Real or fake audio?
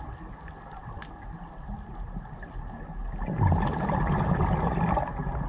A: real